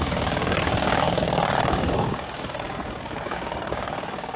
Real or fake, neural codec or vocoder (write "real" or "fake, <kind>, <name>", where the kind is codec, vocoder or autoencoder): fake, codec, DAC